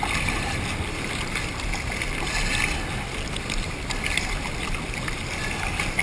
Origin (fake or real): real